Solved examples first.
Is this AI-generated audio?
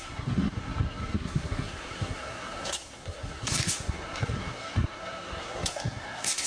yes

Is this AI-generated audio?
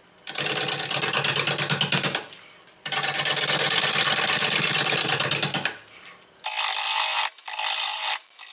no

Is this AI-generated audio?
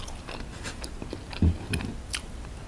no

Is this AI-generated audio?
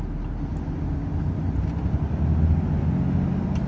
no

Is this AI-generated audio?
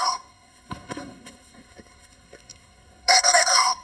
yes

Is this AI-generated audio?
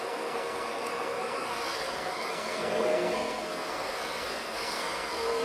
yes